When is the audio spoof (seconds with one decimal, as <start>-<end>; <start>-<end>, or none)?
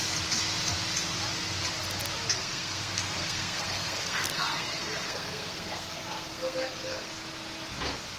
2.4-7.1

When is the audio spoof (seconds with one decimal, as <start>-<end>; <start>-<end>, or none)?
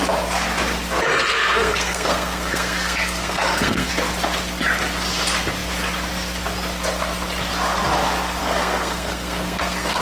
1.3-3.9; 8.4-10.0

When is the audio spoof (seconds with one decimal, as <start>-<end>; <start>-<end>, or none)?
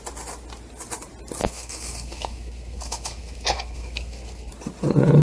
1.4-4.5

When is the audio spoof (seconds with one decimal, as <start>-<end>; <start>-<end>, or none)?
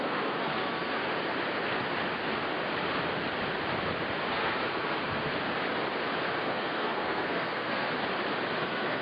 0.0-1.0; 4.3-5.3; 6.4-7.9; 8.6-9.0